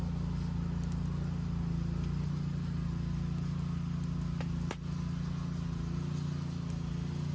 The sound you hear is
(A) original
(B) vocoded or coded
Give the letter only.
A